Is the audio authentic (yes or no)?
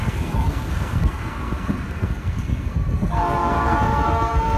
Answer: no